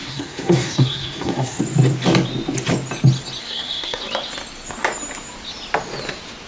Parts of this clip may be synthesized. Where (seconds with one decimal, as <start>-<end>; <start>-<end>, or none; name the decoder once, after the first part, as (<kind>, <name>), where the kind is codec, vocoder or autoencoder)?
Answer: 0.0-1.6 (codec, SNAC); 3.4-4.0